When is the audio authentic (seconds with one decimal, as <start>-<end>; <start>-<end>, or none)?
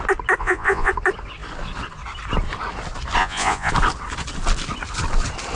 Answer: 0.0-0.4; 0.9-3.2; 3.7-5.6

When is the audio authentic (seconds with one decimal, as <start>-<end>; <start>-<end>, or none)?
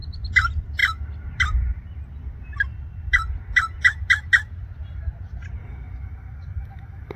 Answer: 0.0-5.6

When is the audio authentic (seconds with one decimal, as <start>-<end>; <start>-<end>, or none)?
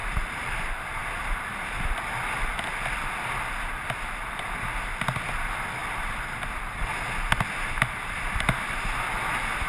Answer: 0.6-9.7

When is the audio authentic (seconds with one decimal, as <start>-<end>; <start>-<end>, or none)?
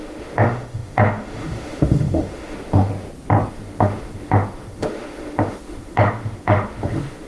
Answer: 2.9-3.5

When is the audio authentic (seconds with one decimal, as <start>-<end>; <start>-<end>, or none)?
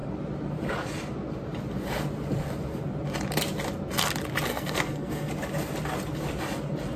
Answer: 0.0-4.5; 5.3-7.0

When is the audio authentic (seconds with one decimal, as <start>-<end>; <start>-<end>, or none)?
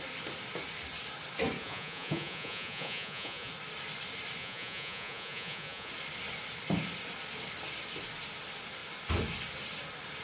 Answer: 0.0-1.6; 3.5-4.4; 5.9-10.2